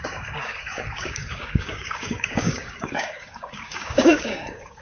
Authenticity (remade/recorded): remade